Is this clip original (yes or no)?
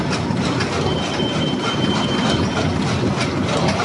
yes